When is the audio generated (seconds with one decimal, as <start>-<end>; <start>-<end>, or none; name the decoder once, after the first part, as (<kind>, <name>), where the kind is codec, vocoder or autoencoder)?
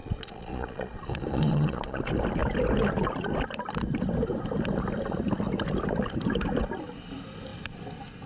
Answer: 0.0-2.0 (vocoder, Vocos)